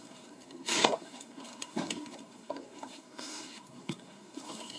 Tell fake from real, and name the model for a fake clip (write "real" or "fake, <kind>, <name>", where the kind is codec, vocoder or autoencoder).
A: fake, codec, SNAC